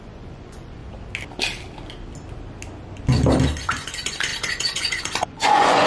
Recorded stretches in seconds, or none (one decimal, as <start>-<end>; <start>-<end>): 0.8-3.6